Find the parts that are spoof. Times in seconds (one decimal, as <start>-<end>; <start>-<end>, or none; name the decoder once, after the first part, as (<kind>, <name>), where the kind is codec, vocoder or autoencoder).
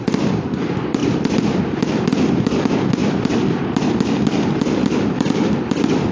1.0-1.6 (vocoder, BigVGAN v2); 3.0-3.9